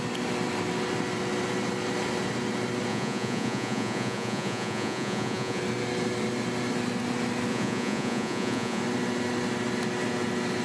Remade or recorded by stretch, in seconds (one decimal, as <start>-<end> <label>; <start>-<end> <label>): 0.0-2.9 recorded; 2.9-5.6 remade; 5.6-7.5 recorded; 7.5-8.8 remade; 8.8-10.6 recorded